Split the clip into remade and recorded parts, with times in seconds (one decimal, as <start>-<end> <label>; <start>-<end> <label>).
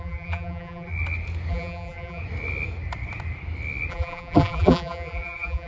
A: 0.0-0.9 remade; 0.9-1.5 recorded; 1.5-2.2 remade; 2.2-3.9 recorded; 3.9-5.7 remade